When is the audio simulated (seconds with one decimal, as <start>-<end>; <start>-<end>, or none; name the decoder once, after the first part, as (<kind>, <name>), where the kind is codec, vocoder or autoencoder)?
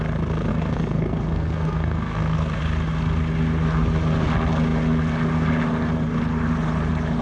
0.5-2.6 (codec, SNAC)